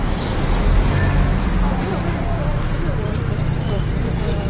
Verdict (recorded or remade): remade